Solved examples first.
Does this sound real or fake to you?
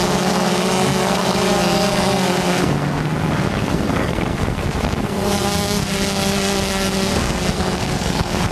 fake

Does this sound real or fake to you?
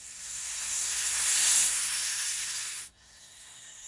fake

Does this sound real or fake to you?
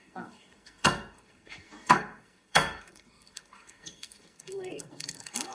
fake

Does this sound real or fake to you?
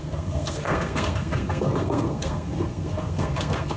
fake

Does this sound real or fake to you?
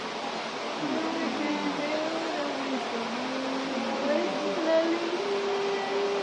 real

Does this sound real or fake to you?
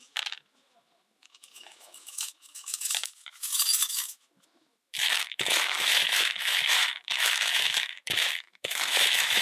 fake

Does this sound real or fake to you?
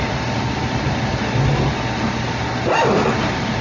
real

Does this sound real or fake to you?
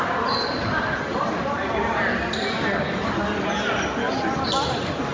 real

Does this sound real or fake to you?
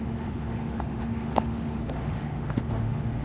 fake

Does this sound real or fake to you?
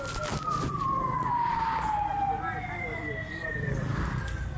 fake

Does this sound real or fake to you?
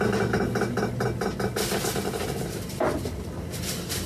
real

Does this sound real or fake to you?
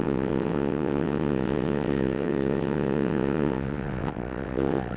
fake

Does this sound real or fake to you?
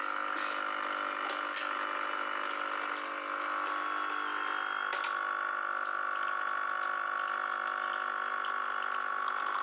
real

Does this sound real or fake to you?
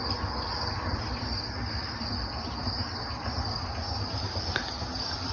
real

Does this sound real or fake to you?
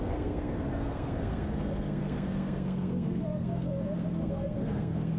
fake